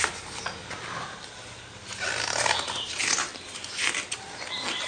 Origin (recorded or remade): recorded